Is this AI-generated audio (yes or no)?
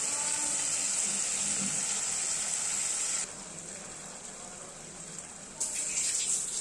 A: no